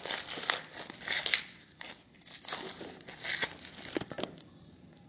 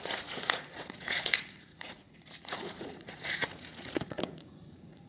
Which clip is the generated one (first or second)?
second